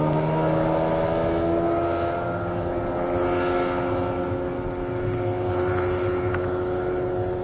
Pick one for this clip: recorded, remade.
recorded